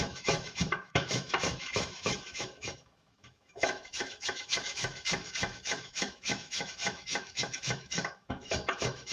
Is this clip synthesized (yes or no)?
yes